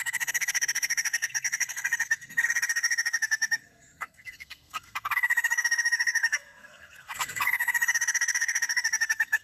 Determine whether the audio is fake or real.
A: fake